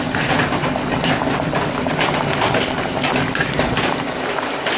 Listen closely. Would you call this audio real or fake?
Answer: fake